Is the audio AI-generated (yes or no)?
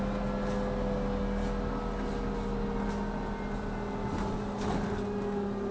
no